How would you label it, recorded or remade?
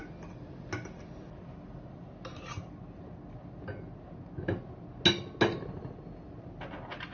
recorded